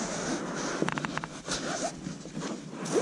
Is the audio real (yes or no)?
yes